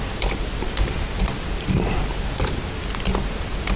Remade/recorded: recorded